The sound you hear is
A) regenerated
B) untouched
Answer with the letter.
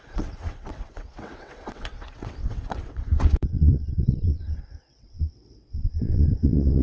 A